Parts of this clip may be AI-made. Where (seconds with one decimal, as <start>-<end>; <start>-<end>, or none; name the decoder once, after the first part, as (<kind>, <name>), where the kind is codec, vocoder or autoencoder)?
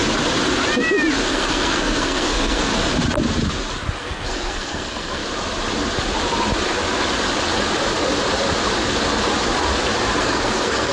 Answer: 1.2-2.7 (codec, SNAC); 4.0-5.2; 10.2-10.9